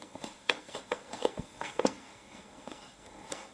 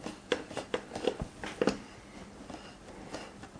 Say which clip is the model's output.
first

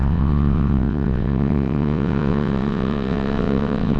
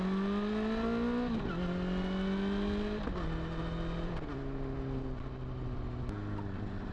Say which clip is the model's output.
first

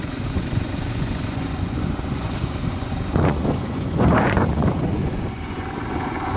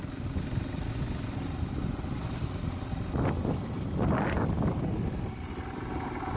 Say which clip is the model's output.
first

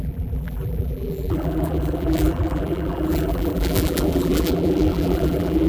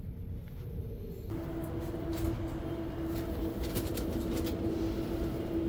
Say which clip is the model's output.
first